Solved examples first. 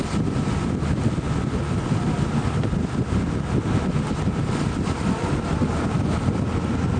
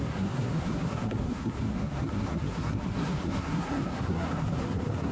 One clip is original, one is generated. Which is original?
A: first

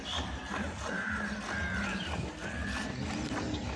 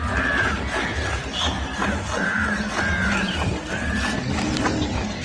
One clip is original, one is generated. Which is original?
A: second